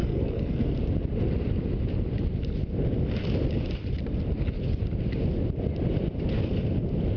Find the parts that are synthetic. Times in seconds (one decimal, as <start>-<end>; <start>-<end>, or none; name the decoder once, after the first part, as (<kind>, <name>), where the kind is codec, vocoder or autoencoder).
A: 0.0-0.7 (codec, SNAC)